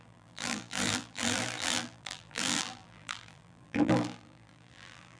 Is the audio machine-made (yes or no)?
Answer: yes